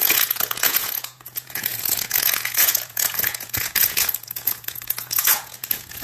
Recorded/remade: remade